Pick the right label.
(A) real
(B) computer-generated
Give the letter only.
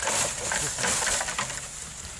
A